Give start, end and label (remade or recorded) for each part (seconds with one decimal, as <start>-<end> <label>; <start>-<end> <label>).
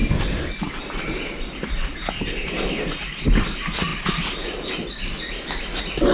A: 0.0-6.1 recorded